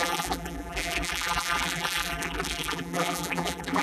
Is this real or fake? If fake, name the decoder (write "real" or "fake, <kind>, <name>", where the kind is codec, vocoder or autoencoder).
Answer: fake, vocoder, BigVGAN v2